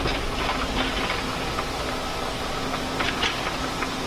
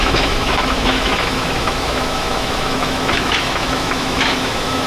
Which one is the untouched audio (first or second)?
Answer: first